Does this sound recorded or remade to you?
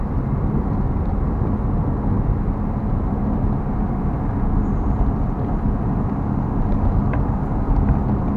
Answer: recorded